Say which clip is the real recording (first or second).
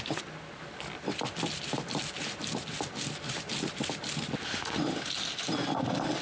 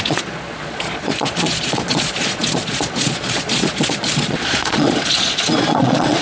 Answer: first